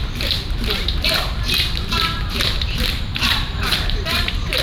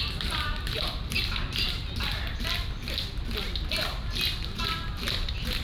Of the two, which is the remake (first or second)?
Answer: first